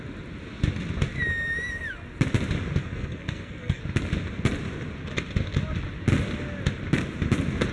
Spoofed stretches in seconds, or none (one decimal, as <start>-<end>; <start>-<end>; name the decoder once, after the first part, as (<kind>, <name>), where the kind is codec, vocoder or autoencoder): 2.8-3.8 (codec, SNAC)